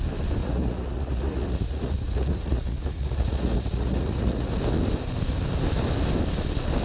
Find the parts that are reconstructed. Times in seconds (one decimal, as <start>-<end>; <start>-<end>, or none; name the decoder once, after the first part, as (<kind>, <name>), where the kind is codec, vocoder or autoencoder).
0.4-4.5 (vocoder, Vocos)